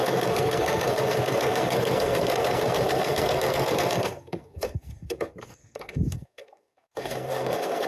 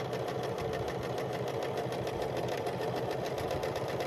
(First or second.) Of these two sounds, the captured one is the second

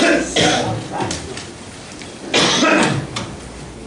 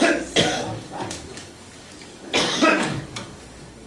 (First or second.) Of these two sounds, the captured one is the first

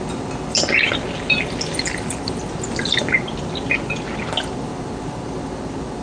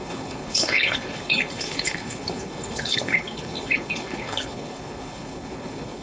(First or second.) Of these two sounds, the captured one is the first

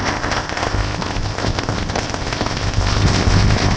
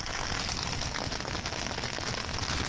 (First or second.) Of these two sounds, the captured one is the second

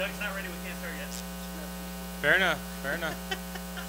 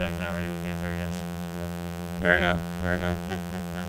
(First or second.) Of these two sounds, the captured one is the first